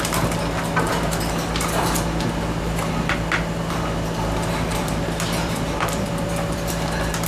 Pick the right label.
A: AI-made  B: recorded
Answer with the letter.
A